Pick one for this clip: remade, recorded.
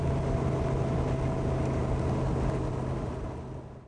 recorded